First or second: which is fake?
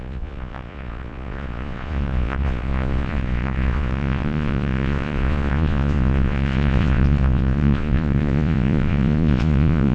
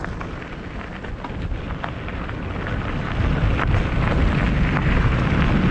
first